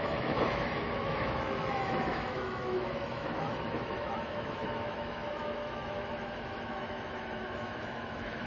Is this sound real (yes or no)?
no